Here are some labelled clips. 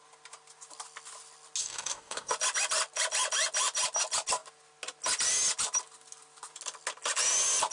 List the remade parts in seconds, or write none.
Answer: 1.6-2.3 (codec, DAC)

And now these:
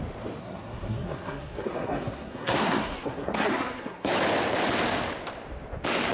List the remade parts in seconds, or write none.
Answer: 0.4-4.1 (codec, SNAC)

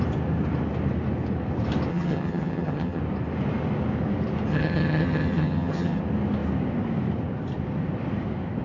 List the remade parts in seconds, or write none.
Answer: 1.9-3.0 (vocoder, HiFi-GAN); 4.5-6.0

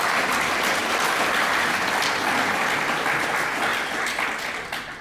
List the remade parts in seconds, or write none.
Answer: 0.8-3.2 (vocoder, BigVGAN v2); 3.7-4.3

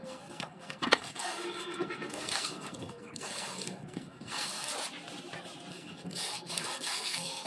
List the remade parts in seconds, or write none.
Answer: 0.0-4.7 (codec, SNAC); 5.7-7.5

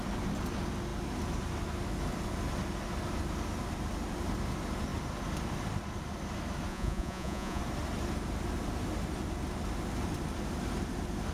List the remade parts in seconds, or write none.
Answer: 6.7-7.6 (vocoder, Vocos)

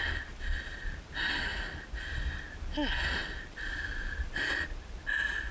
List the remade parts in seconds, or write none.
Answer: 3.2-4.5 (vocoder, BigVGAN v2)

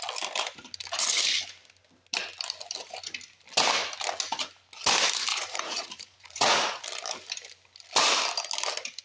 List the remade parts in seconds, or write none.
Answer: 5.3-6.8 (vocoder, Vocos)